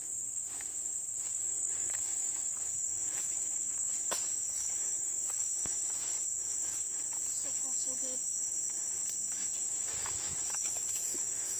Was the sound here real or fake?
fake